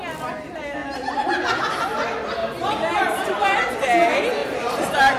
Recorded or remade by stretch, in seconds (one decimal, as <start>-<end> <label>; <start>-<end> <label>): 0.0-0.8 recorded; 0.8-1.3 remade; 1.3-2.4 recorded; 2.4-3.7 remade; 3.7-4.4 recorded; 4.4-5.2 remade